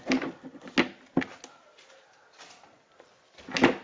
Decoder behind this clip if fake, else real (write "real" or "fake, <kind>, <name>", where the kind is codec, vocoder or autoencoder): real